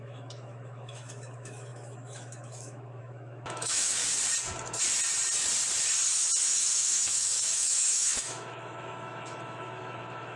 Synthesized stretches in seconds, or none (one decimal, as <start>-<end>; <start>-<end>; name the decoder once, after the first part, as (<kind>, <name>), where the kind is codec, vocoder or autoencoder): 0.0-4.0 (autoencoder, DAC-VAE); 6.4-10.4